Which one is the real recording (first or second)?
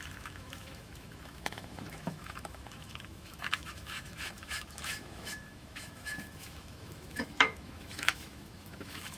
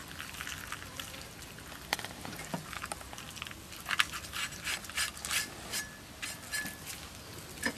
second